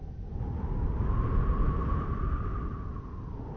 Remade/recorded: recorded